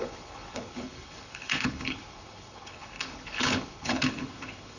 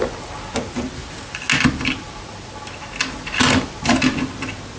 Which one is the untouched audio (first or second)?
second